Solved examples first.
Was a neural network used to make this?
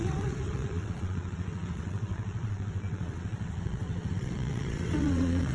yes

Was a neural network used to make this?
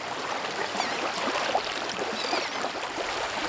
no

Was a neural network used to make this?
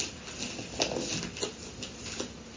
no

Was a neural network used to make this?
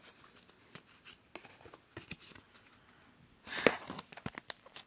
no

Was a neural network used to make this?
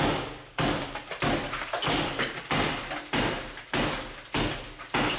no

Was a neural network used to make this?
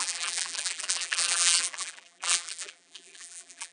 yes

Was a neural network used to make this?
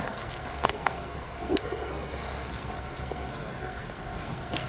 yes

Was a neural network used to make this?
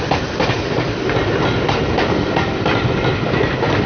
no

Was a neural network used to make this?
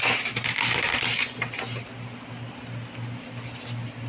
no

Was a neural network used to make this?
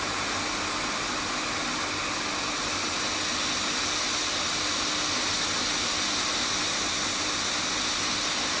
no